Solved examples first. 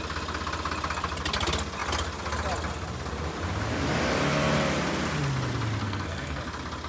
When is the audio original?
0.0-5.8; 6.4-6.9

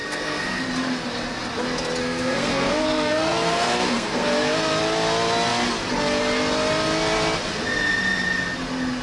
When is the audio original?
0.6-2.0; 4.3-9.0

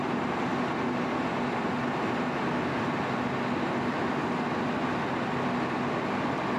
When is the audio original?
0.0-6.6

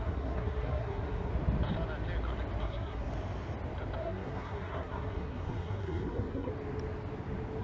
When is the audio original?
1.3-2.6; 3.1-4.0; 6.5-7.6

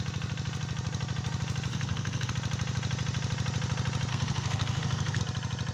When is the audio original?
0.0-1.7; 2.3-4.1; 5.2-5.7